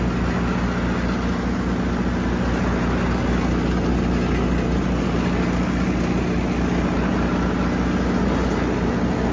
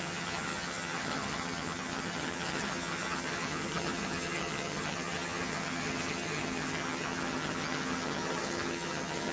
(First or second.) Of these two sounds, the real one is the first